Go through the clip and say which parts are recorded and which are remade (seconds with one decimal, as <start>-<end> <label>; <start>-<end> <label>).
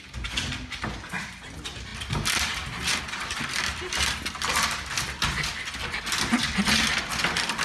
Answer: 0.0-7.6 recorded